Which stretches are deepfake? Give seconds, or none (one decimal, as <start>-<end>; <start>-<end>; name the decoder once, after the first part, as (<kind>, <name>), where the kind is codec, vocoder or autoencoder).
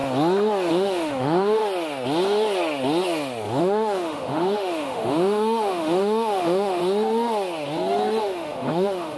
0.7-1.6 (autoencoder, DAC-VAE); 3.6-6.8; 8.2-9.2